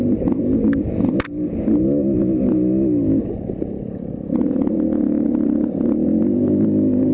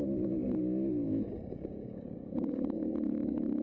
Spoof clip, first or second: second